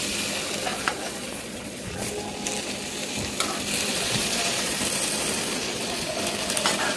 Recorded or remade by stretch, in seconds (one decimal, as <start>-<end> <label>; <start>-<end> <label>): 0.0-0.7 recorded; 0.7-2.1 remade; 2.1-3.9 recorded; 3.9-4.8 remade; 4.8-5.5 recorded; 5.5-6.2 remade; 6.2-7.0 recorded